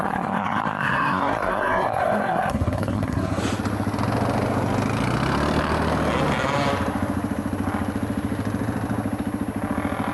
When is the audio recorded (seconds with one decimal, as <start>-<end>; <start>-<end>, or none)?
3.4-10.1